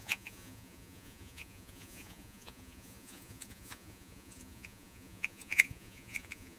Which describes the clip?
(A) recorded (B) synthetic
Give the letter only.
B